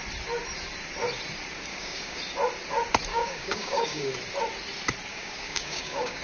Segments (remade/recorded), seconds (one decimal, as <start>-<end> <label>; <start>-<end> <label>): 0.0-1.7 recorded; 1.7-2.2 remade; 2.2-3.1 recorded; 3.1-4.1 remade; 4.1-5.1 recorded; 5.1-6.2 remade